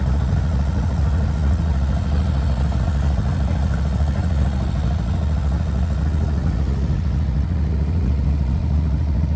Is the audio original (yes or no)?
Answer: no